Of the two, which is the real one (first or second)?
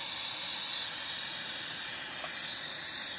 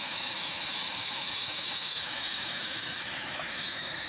first